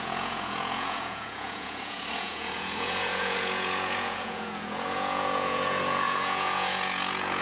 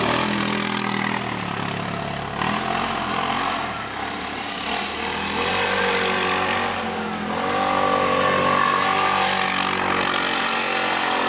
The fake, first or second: first